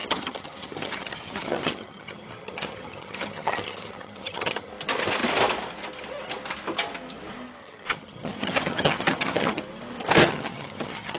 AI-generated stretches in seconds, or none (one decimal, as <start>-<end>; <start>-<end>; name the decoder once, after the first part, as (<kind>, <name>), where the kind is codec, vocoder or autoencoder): 0.0-4.7 (vocoder, HiFi-GAN); 7.6-9.6; 10.2-11.2